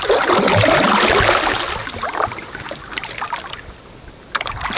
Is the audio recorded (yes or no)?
yes